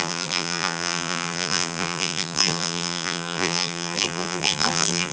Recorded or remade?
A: remade